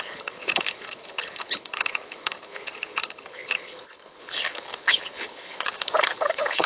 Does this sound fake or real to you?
fake